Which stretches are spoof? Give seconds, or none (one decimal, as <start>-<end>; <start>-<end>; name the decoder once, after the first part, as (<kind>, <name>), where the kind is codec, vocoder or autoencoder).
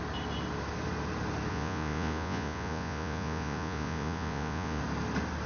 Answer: 1.5-4.8 (vocoder, Vocos)